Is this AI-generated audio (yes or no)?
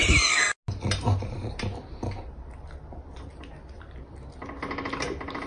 no